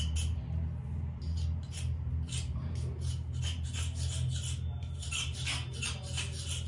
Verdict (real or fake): real